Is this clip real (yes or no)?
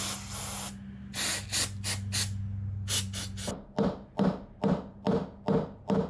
yes